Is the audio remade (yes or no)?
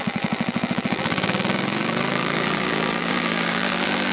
yes